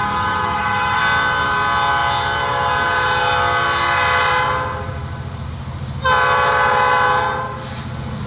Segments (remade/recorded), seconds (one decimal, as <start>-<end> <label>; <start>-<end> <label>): 0.0-1.0 remade; 1.0-8.3 recorded